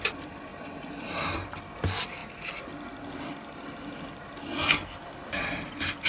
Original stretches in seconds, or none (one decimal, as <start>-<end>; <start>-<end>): 0.5-1.0; 2.2-5.3

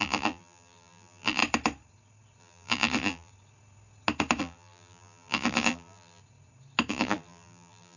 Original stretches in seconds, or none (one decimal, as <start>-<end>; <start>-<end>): 1.4-2.4; 3.3-4.4; 6.2-6.9

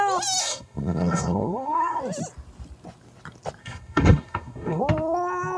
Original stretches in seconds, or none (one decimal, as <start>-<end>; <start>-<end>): 0.0-0.4; 2.0-3.6; 4.8-5.6

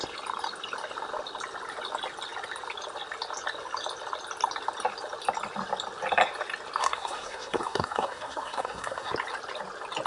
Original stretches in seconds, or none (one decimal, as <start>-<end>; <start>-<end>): 0.0-6.8; 9.1-10.1

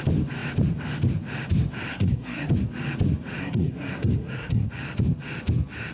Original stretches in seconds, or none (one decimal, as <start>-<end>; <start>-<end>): 0.0-1.9; 2.5-3.4; 4.7-5.9

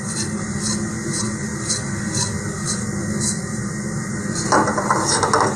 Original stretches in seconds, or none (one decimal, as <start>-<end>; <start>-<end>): 0.0-5.6

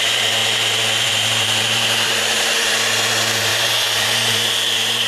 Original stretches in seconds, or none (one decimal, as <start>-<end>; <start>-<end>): none

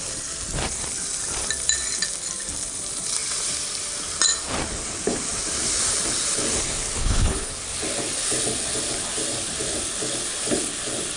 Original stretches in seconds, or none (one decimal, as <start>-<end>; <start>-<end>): 0.0-7.0; 7.5-11.2